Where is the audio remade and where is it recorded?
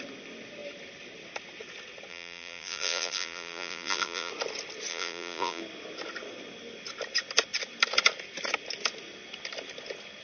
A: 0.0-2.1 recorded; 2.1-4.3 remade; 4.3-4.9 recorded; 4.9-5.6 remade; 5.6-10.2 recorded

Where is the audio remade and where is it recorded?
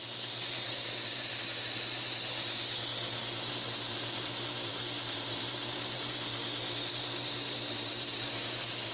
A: 0.0-2.9 remade; 2.9-3.5 recorded; 3.5-6.3 remade; 6.3-6.9 recorded; 6.9-8.9 remade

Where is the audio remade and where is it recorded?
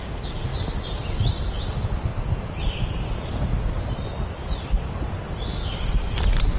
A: 0.0-6.6 recorded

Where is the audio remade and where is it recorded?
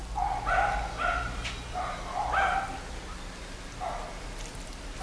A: 0.0-5.0 recorded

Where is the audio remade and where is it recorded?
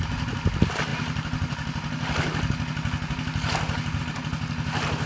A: 0.0-5.1 recorded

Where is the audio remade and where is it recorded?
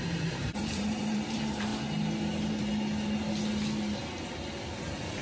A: 0.0-1.7 remade; 1.7-4.8 recorded; 4.8-5.2 remade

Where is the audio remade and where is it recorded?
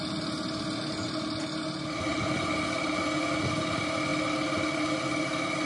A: 0.0-5.7 recorded